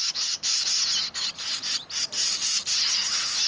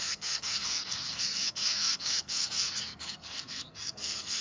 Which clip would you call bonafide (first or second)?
first